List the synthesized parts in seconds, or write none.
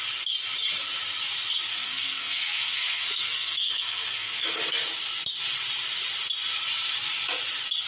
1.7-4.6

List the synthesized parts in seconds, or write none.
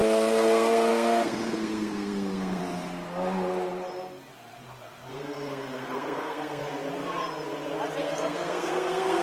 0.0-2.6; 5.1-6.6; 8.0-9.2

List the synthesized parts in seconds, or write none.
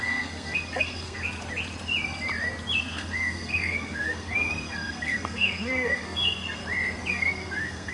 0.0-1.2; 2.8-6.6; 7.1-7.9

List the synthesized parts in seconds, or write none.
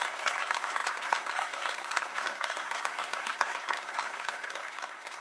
0.0-5.2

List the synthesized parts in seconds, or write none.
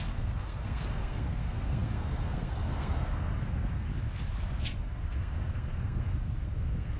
0.0-3.9; 4.6-7.0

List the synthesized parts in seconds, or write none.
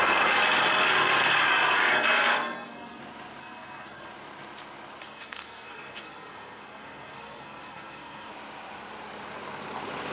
2.3-3.0; 3.4-4.1; 5.0-8.3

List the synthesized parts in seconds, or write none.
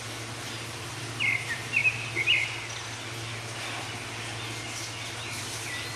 none